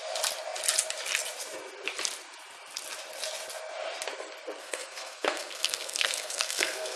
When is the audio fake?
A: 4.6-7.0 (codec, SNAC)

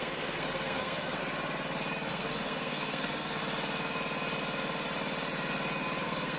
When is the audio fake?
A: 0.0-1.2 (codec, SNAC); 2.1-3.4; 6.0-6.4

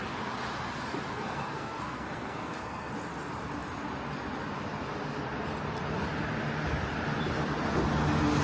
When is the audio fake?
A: 1.1-2.9 (codec, SNAC)

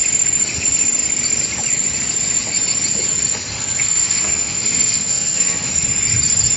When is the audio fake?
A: 3.5-5.7 (codec, SNAC)